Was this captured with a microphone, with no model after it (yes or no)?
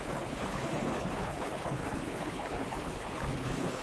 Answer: no